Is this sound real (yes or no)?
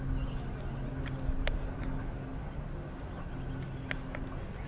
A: yes